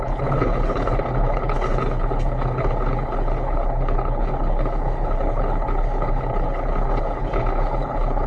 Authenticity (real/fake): fake